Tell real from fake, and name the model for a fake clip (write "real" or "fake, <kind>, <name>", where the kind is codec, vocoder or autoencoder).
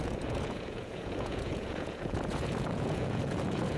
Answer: fake, vocoder, Vocos